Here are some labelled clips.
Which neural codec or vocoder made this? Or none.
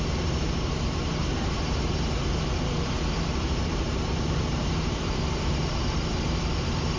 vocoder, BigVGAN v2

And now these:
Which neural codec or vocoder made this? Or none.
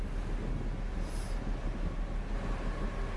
none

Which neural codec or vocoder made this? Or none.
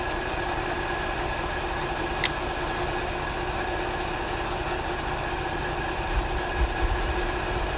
none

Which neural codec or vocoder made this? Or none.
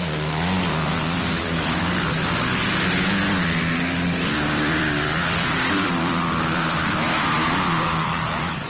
vocoder, BigVGAN v2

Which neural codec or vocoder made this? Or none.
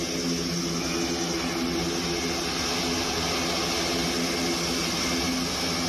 none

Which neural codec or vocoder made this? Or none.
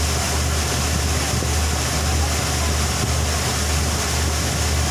none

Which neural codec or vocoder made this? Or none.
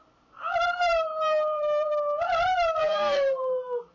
vocoder, BigVGAN v2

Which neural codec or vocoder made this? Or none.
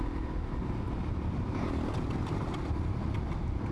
none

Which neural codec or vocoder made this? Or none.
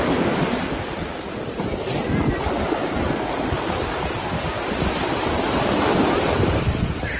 vocoder, BigVGAN v2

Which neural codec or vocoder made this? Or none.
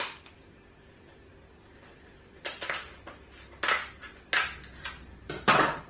vocoder, BigVGAN v2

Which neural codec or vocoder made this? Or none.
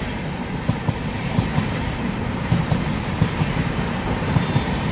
vocoder, BigVGAN v2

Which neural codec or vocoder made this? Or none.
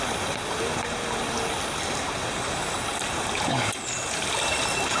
none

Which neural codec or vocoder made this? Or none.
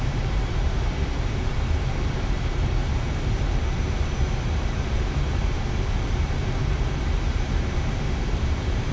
vocoder, BigVGAN v2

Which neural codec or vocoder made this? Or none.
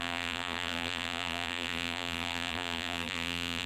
vocoder, BigVGAN v2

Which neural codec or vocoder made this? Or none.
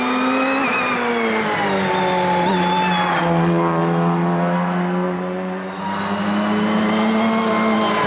none